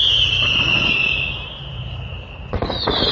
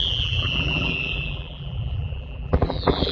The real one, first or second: first